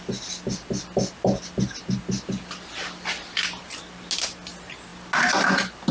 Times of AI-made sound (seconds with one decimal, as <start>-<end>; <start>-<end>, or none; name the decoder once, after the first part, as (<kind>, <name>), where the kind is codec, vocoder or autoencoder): none